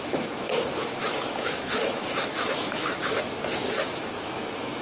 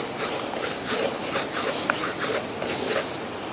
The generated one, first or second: first